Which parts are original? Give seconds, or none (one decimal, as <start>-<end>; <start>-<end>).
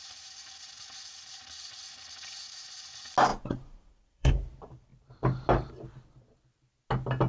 0.0-3.3; 4.3-7.3